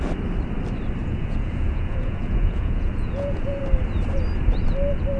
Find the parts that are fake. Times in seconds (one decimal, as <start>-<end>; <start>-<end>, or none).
1.0-3.6